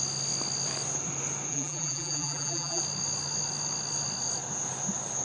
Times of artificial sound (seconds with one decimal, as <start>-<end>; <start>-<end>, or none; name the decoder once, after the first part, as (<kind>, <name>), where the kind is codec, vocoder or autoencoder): 1.5-2.8 (vocoder, BigVGAN v2)